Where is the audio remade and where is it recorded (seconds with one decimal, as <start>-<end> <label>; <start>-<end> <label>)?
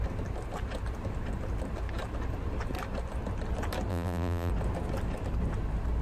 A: 0.0-3.9 recorded; 3.9-4.5 remade; 4.5-6.0 recorded